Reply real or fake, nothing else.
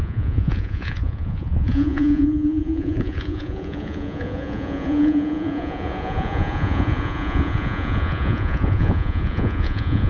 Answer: fake